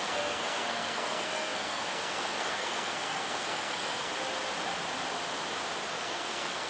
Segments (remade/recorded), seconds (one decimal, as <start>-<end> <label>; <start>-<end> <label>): 0.0-4.1 remade; 4.1-5.9 recorded; 5.9-6.7 remade